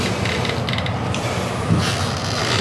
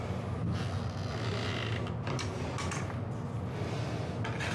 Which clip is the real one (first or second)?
second